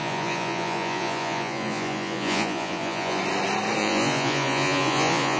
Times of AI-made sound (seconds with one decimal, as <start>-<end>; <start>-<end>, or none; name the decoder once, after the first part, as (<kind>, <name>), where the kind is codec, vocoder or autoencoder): 0.0-3.2 (vocoder, Vocos); 3.8-5.4